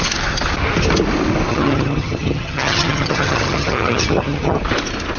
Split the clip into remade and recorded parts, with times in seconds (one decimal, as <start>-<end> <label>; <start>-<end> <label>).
0.0-1.5 recorded; 1.5-4.6 remade; 4.6-5.2 recorded